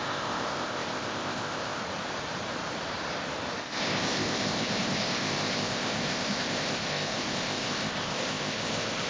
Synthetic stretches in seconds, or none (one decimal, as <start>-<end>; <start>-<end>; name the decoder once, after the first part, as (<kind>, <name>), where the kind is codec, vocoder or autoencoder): 0.0-1.8 (codec, ZipCodec); 3.6-9.1